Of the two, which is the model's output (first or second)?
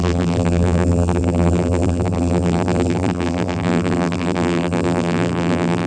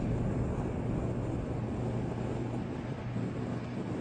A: first